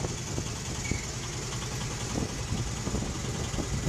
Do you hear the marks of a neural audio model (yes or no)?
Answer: no